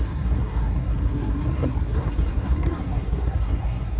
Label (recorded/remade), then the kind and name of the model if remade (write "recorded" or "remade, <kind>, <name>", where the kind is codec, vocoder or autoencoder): remade, codec, SNAC